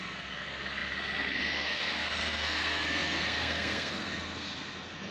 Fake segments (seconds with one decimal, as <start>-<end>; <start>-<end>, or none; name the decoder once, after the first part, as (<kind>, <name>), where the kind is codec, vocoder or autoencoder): 0.0-5.1 (codec, SNAC)